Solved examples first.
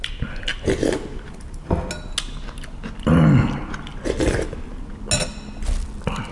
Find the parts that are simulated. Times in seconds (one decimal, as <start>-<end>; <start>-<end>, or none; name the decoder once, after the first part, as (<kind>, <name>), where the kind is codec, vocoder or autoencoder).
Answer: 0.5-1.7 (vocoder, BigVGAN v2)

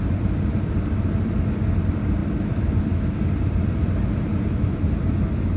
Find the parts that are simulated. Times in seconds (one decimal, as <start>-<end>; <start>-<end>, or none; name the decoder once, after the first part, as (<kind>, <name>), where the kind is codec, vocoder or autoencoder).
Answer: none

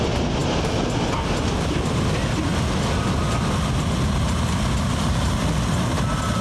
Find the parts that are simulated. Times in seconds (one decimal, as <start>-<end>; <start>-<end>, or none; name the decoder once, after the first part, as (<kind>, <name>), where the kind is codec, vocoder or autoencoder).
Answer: none

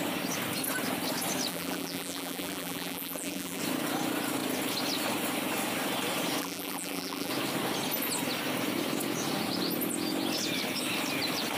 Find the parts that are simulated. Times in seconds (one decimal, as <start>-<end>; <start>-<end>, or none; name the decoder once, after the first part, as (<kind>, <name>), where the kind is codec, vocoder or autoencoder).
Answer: 1.5-3.6 (vocoder, BigVGAN v2); 6.4-7.3

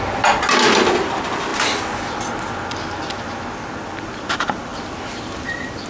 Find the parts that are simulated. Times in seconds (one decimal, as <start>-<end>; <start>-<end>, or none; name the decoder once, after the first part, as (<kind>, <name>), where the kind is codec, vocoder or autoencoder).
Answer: none

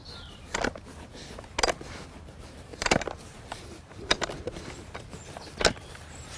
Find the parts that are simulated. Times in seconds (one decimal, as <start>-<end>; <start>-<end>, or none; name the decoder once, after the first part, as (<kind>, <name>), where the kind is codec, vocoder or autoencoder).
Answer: 2.7-5.6 (vocoder, BigVGAN v2)